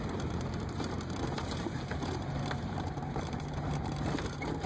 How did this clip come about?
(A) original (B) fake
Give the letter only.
B